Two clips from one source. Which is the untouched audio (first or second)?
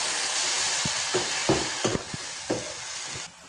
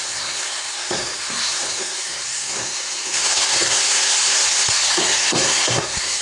first